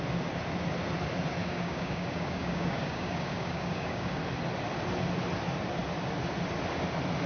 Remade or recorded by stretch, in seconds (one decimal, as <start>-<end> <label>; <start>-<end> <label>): 0.0-1.4 recorded; 1.4-4.2 remade; 4.2-7.3 recorded